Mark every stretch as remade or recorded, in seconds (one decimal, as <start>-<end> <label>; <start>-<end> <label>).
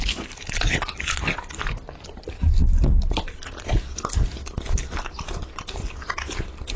0.0-6.8 recorded